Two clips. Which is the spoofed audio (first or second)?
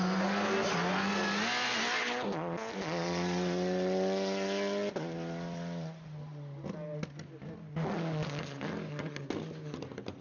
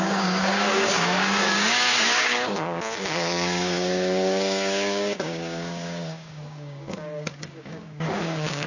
second